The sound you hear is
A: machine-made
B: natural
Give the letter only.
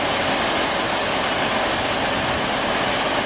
B